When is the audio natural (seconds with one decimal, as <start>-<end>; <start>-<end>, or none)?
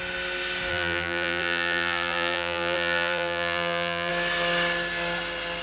0.0-0.7; 4.1-5.6